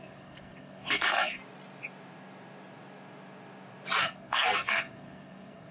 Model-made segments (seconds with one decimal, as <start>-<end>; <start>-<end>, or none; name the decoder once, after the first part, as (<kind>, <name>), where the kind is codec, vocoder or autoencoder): 0.0-1.4 (codec, SNAC); 4.0-5.7